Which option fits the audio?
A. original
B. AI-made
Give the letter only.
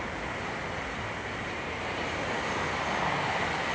A